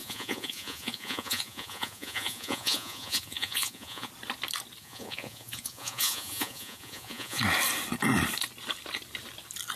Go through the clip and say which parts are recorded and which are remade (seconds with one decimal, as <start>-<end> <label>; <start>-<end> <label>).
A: 0.0-4.1 remade; 4.1-4.8 recorded; 4.8-7.4 remade; 7.4-9.8 recorded